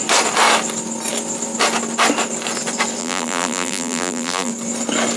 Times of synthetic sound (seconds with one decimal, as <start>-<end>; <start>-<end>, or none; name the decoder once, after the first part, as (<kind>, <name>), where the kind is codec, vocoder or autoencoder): 3.0-4.5 (vocoder, BigVGAN v2)